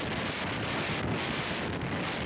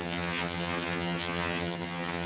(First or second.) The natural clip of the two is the first